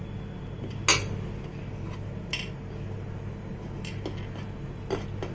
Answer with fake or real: real